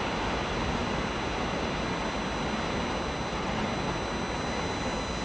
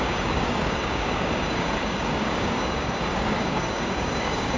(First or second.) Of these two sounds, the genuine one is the first